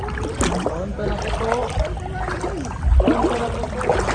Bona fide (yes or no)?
yes